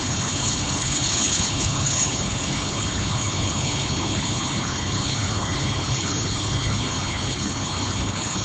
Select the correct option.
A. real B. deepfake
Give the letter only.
B